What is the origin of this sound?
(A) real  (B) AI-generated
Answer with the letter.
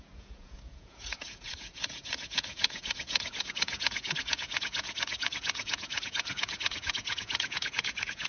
B